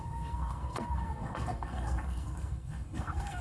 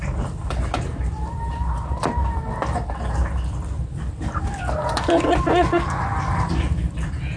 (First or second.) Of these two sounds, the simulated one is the first